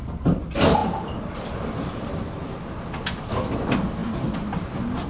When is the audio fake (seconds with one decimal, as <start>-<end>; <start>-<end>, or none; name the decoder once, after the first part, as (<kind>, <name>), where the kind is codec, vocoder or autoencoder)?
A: none